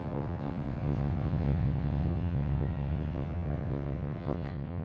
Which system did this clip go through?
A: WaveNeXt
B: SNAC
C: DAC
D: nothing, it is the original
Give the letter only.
A